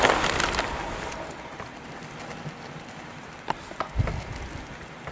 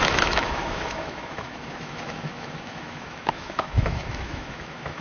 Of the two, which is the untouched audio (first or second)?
first